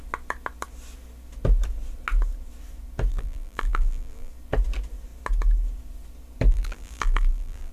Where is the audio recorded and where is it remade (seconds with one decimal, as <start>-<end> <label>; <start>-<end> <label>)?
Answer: 0.0-3.1 recorded; 3.1-4.3 remade; 4.3-6.5 recorded; 6.5-7.7 remade